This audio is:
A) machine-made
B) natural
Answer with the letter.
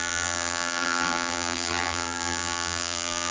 A